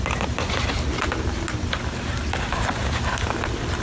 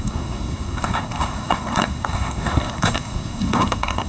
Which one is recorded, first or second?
first